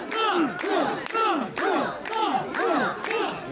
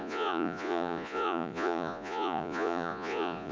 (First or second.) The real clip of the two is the first